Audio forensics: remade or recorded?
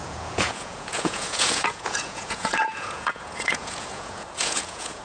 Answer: remade